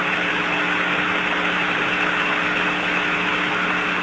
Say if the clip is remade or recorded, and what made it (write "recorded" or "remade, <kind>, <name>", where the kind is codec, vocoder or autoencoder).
recorded